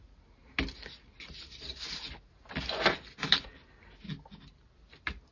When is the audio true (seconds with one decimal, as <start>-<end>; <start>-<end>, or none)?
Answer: 0.0-5.3